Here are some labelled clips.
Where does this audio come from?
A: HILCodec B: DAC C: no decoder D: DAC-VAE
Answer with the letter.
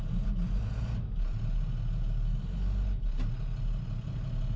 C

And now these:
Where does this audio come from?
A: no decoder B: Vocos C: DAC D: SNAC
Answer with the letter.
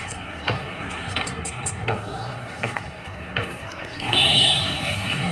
D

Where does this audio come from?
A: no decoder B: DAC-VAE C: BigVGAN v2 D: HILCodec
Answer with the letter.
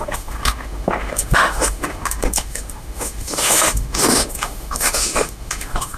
B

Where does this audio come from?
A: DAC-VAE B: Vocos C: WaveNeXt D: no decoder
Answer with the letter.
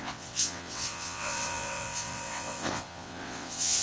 C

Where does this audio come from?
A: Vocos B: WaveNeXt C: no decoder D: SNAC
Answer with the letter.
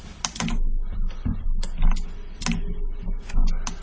C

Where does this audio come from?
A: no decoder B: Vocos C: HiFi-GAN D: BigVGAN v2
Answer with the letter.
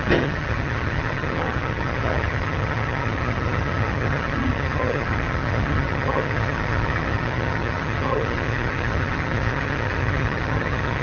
C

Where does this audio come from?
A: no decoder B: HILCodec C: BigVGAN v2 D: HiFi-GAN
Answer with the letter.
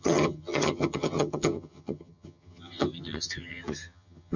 D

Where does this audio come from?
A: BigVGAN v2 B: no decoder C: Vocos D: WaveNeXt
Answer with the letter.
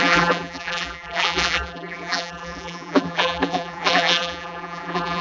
A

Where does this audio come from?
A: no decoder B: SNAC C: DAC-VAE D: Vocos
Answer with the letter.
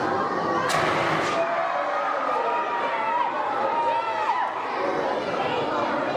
A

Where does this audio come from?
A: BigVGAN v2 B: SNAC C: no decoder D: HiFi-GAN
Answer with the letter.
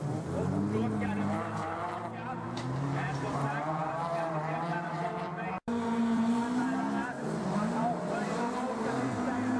A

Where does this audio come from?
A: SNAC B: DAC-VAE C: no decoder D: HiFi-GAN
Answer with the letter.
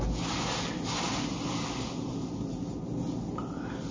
C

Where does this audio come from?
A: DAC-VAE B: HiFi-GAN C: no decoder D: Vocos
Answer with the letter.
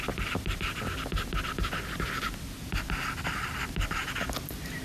C